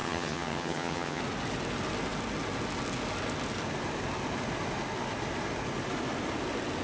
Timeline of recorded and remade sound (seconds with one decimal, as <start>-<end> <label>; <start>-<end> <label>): 0.0-1.2 remade; 1.2-6.8 recorded